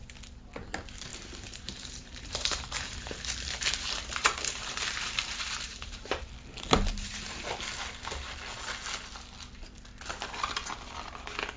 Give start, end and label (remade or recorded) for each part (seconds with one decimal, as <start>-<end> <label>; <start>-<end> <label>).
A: 0.0-1.1 recorded; 1.1-6.3 remade; 6.3-6.9 recorded; 6.9-7.6 remade; 7.6-11.6 recorded